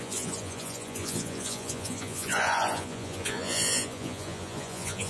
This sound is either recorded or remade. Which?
remade